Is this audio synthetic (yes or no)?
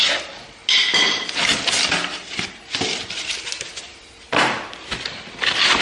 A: no